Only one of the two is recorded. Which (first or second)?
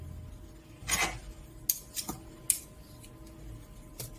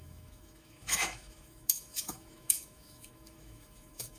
first